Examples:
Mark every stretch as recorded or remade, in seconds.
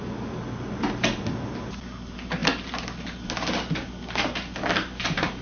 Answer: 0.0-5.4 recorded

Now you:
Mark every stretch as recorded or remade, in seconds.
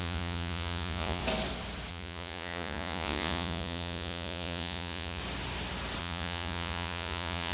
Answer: 0.0-1.2 remade; 1.2-1.9 recorded; 1.9-5.2 remade; 5.2-6.0 recorded; 6.0-7.5 remade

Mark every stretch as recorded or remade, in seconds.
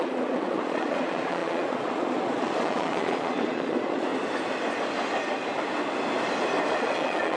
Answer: 0.0-4.1 remade; 4.1-6.7 recorded; 6.7-7.4 remade